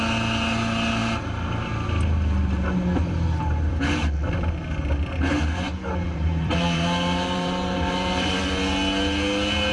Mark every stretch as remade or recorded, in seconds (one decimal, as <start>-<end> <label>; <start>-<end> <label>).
0.0-6.0 recorded; 6.0-8.4 remade; 8.4-9.7 recorded